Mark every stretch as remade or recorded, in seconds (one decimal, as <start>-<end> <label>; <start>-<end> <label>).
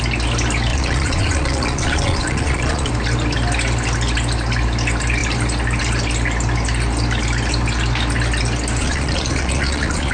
0.0-0.7 recorded; 0.7-2.9 remade; 2.9-8.8 recorded; 8.8-10.1 remade